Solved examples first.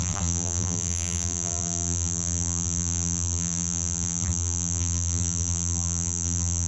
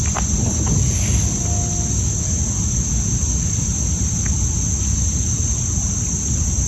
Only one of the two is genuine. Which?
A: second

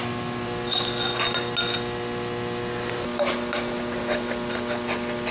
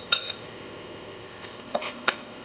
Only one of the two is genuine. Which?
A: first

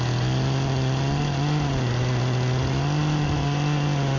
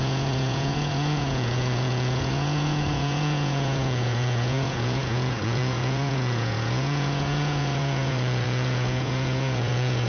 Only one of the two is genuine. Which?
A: first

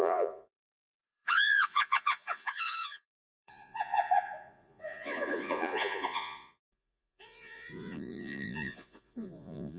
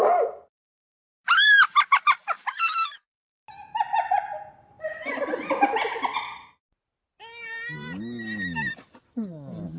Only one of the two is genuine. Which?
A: second